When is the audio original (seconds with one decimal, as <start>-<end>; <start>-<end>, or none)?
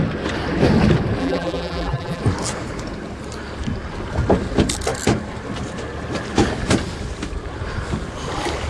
0.0-1.2; 2.2-8.7